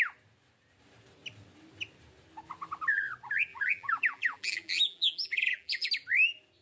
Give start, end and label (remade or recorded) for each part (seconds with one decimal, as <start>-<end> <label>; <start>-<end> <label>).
0.0-3.5 recorded; 3.5-5.9 remade; 5.9-6.6 recorded